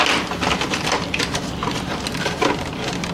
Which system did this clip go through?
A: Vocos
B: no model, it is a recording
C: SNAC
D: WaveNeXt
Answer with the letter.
B